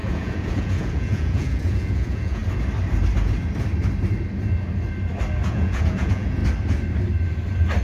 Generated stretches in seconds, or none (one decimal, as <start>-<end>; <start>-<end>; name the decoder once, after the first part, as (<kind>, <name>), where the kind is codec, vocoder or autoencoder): 0.0-2.4 (vocoder, Vocos); 5.5-6.4